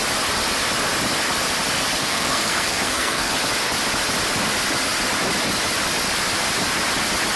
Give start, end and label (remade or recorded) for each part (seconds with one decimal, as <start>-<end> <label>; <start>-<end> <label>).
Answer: 0.0-2.0 recorded; 2.0-3.3 remade; 3.3-7.4 recorded